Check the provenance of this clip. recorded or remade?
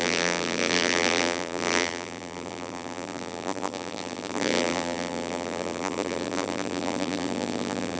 remade